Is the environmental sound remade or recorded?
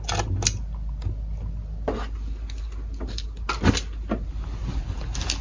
recorded